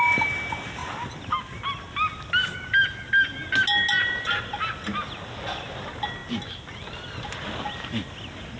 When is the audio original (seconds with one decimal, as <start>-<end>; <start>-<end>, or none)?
0.0-8.6